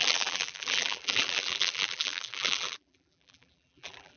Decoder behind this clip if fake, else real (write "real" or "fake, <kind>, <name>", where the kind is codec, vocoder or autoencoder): fake, vocoder, BigVGAN v2